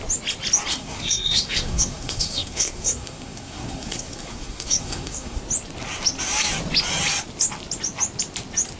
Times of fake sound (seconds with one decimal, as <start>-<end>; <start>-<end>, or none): 0.7-5.4